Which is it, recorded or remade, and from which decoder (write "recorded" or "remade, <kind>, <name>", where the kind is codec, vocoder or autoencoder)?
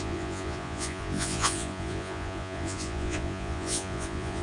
remade, vocoder, Vocos